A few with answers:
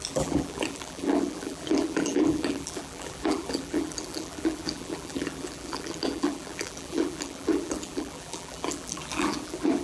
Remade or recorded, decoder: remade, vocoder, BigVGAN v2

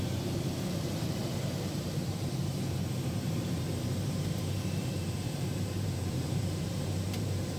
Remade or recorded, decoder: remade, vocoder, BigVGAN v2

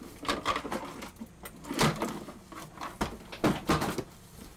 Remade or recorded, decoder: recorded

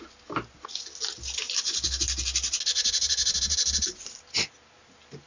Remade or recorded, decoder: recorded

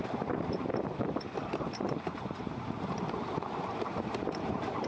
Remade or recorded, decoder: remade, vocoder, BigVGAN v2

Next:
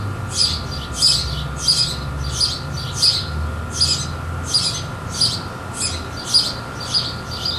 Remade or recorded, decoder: recorded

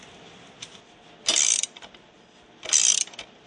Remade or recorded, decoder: recorded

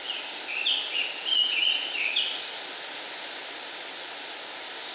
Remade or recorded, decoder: recorded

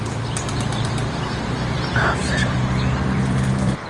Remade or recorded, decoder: remade, vocoder, BigVGAN v2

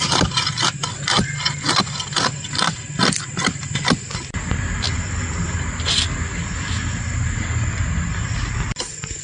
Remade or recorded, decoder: recorded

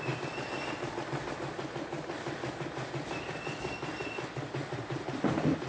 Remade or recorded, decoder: recorded